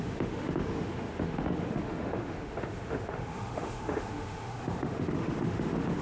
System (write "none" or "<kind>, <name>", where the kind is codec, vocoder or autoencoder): autoencoder, DAC-VAE